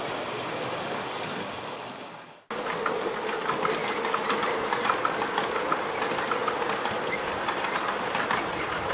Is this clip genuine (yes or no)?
yes